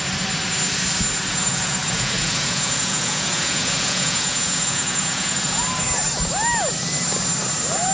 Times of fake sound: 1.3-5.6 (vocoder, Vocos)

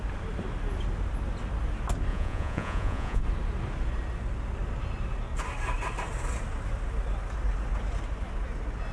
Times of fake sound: 2.1-3.2 (vocoder, Vocos)

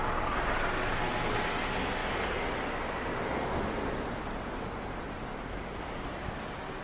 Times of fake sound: none

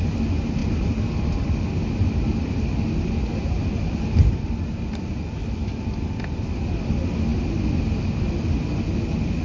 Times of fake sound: none